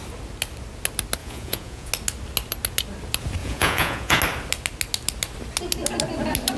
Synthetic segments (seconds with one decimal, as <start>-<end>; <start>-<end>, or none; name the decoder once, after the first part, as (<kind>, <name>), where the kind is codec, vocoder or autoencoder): 1.2-1.9 (vocoder, Vocos); 3.4-4.2